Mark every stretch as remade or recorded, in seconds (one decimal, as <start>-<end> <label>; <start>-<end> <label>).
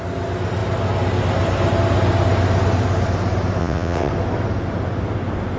0.0-3.6 recorded; 3.6-4.1 remade; 4.1-5.6 recorded